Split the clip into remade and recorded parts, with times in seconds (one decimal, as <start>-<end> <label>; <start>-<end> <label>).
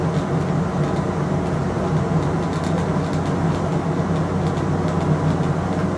0.0-6.0 recorded